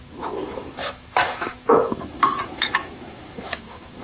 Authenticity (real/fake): fake